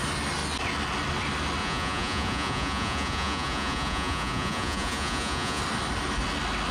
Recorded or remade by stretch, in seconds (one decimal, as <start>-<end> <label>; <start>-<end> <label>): 0.0-1.6 recorded; 1.6-5.6 remade; 5.6-6.7 recorded